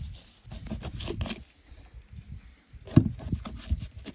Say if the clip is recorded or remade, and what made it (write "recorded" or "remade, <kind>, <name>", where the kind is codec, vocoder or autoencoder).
recorded